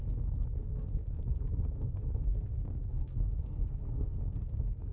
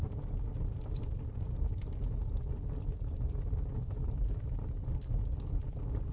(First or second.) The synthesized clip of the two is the first